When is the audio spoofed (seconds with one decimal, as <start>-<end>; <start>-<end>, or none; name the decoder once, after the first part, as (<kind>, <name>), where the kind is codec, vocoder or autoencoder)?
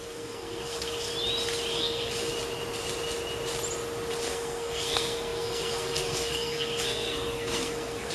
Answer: 0.0-1.1 (codec, SNAC); 1.7-2.3; 4.1-8.1